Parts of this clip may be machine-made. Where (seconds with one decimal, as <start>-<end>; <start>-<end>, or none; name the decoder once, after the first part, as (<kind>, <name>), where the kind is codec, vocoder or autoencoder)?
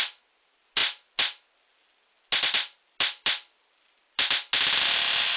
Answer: none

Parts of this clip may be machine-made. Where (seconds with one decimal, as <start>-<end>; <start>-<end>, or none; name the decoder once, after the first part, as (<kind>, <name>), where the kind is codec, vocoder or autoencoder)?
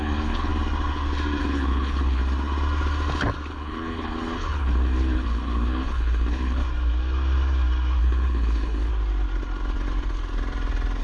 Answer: 0.0-0.5 (codec, HILCodec); 1.4-2.2; 3.5-6.6; 8.0-8.9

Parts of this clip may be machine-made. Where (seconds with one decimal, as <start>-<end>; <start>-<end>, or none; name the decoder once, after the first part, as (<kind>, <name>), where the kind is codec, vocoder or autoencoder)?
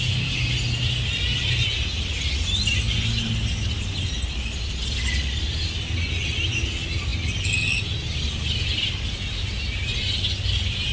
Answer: none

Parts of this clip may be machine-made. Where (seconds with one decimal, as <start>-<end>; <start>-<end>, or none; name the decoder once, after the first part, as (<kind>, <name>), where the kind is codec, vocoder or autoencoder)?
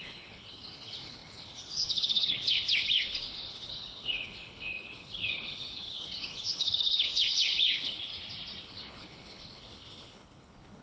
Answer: 0.0-8.1 (codec, HILCodec); 8.6-10.8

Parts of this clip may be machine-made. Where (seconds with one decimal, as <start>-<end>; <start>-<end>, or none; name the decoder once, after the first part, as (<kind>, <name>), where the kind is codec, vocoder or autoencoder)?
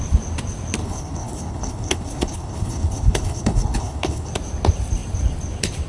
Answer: 0.8-4.3 (codec, HILCodec)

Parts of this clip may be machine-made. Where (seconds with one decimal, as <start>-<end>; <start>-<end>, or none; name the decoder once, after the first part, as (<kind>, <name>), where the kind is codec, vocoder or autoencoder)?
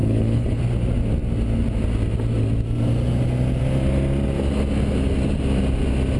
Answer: 0.0-0.6 (codec, HILCodec)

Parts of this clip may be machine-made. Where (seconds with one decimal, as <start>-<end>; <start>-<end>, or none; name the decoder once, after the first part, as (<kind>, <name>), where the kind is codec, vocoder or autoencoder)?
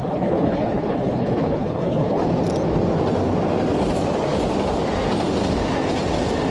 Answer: 0.0-2.3 (codec, HILCodec)